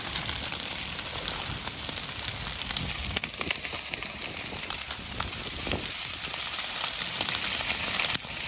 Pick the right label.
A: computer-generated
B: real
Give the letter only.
B